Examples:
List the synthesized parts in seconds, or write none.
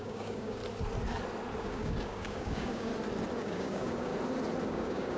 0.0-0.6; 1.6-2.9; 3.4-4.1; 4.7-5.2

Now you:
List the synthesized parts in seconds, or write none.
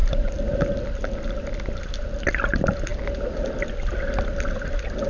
none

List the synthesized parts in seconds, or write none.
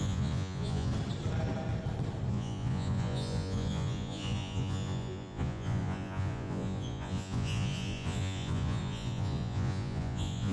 0.0-0.9; 2.3-10.5